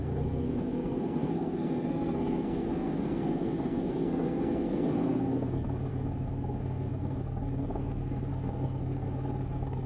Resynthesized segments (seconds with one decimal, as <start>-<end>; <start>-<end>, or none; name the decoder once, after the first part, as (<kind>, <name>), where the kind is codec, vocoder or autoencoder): 0.0-9.9 (codec, SNAC)